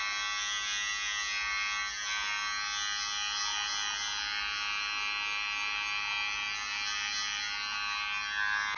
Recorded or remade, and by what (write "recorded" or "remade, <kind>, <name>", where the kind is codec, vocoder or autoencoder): recorded